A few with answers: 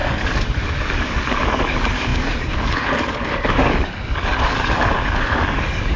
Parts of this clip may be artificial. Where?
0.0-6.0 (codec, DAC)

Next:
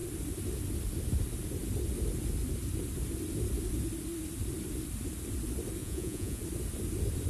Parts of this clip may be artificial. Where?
5.8-6.4 (vocoder, Vocos)